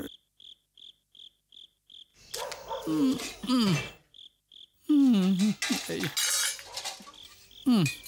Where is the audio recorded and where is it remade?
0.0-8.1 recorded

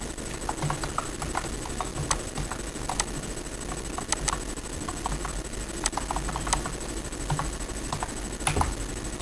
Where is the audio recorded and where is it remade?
0.0-9.2 recorded

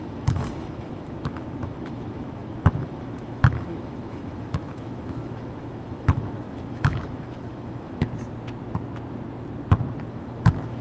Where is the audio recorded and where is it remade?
0.0-8.1 remade; 8.1-10.1 recorded; 10.1-10.8 remade